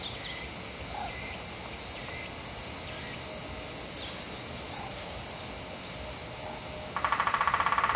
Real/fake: real